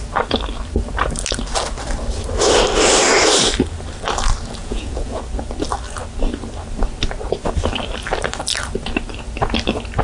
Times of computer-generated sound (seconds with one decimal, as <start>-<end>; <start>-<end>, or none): 4.6-5.2